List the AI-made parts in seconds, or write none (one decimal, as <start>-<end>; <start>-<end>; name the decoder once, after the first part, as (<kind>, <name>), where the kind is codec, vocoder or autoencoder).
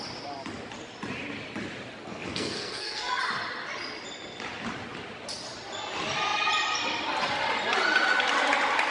2.0-3.2 (codec, SNAC)